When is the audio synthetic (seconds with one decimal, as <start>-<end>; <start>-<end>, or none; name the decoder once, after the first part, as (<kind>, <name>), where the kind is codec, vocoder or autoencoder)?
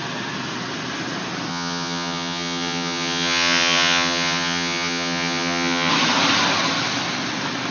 1.5-5.9 (vocoder, HiFi-GAN)